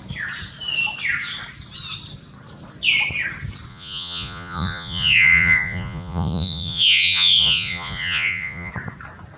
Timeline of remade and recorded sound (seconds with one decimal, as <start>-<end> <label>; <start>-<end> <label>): 0.0-3.7 recorded; 3.7-8.7 remade; 8.7-9.4 recorded